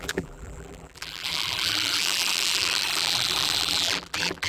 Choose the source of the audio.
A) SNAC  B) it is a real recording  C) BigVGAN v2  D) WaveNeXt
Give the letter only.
C